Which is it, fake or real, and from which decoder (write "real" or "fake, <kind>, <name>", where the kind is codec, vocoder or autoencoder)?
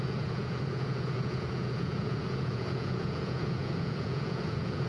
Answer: fake, vocoder, Vocos